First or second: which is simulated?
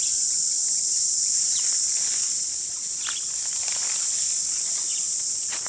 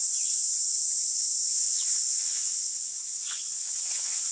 second